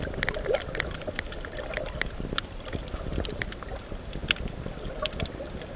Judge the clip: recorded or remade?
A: recorded